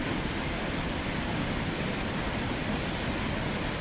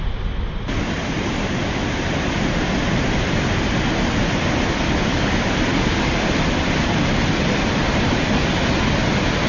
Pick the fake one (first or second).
first